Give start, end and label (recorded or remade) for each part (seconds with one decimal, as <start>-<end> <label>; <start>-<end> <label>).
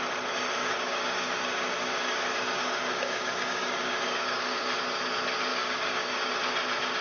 0.0-0.6 recorded; 0.6-4.8 remade; 4.8-5.5 recorded; 5.5-6.3 remade; 6.3-7.0 recorded